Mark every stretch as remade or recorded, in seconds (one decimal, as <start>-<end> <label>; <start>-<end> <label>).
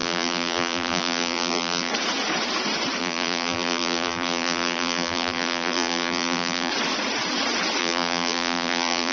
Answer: 0.0-1.9 remade; 1.9-3.0 recorded; 3.0-6.7 remade; 6.7-7.8 recorded; 7.8-9.1 remade